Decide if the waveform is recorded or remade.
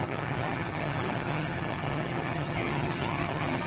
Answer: remade